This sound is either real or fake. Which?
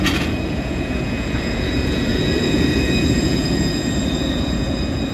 fake